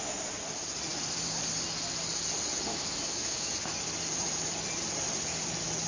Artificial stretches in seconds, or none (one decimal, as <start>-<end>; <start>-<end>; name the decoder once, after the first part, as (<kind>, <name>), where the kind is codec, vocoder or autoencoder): 2.7-3.5 (autoencoder, DAC-VAE)